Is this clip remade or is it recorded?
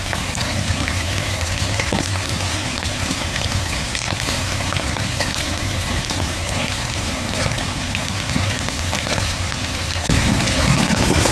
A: remade